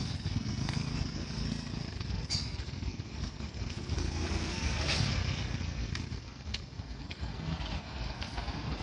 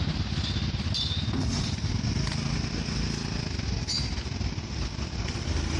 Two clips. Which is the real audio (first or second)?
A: second